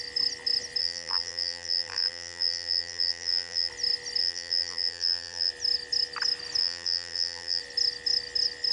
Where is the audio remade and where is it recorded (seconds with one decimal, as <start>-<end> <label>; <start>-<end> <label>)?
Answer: 0.0-0.8 recorded; 0.8-3.7 remade; 3.7-4.2 recorded; 4.2-5.5 remade; 5.5-6.6 recorded; 6.6-7.6 remade; 7.6-8.7 recorded